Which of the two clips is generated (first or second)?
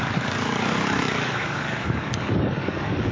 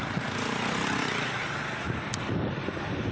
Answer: first